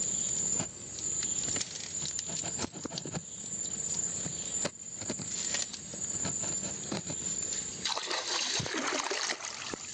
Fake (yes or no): no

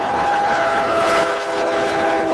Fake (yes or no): yes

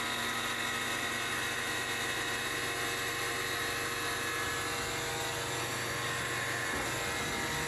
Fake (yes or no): no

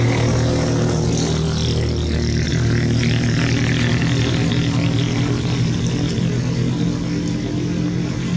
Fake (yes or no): no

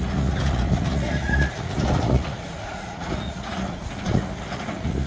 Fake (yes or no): yes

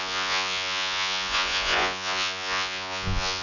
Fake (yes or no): yes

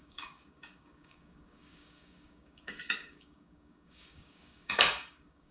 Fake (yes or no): yes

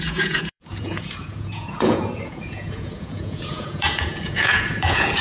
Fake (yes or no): yes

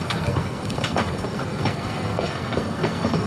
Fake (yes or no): yes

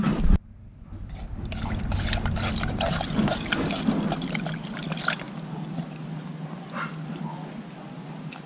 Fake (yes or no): no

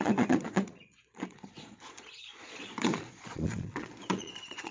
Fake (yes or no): yes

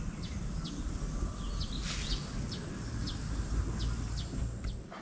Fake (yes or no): no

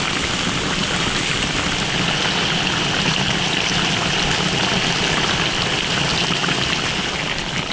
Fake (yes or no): no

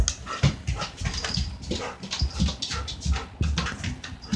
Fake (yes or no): no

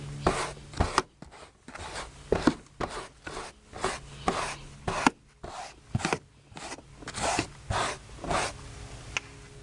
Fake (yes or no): no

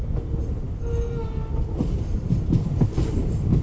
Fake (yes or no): no